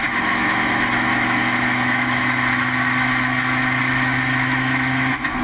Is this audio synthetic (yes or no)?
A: yes